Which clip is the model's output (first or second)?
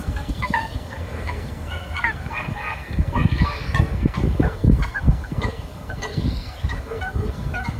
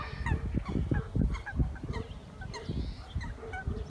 first